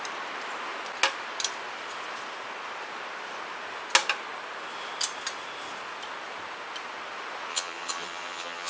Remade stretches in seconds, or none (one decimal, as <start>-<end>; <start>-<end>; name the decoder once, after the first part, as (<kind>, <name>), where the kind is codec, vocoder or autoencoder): 7.5-8.7 (vocoder, HiFi-GAN)